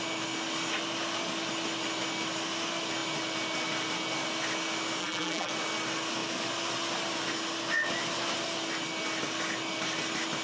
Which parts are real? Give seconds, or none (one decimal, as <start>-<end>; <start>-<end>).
0.0-5.0; 5.5-10.4